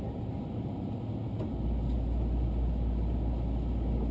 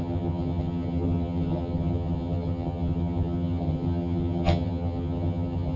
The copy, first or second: second